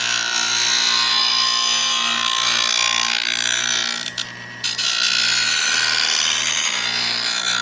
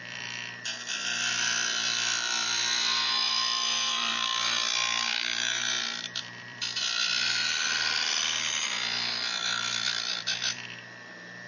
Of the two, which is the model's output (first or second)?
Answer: second